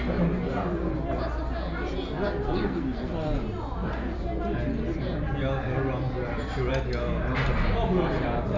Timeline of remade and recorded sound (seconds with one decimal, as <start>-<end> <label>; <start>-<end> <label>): 0.0-2.4 recorded; 2.4-3.1 remade; 3.1-8.6 recorded